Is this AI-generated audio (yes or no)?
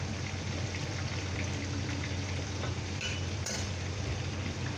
yes